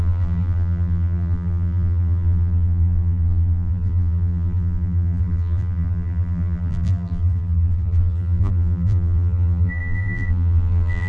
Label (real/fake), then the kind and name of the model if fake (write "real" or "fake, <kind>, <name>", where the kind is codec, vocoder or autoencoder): fake, vocoder, BigVGAN v2